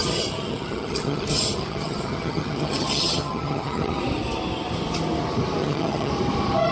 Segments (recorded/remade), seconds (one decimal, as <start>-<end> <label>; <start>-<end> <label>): 0.0-4.0 remade; 4.0-5.6 recorded; 5.6-6.1 remade; 6.1-6.7 recorded